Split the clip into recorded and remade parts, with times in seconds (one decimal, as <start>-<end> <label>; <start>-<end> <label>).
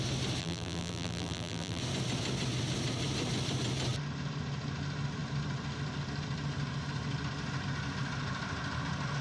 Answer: 0.0-0.4 recorded; 0.4-1.8 remade; 1.8-9.2 recorded